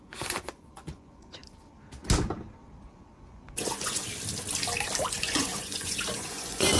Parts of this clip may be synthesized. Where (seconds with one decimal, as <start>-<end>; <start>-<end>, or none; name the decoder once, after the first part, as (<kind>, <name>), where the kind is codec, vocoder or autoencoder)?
0.0-1.4 (vocoder, Vocos); 2.9-4.0; 5.1-6.8